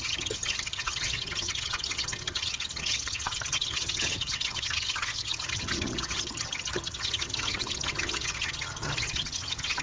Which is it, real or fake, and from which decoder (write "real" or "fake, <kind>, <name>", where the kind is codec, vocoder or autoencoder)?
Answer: fake, vocoder, HiFi-GAN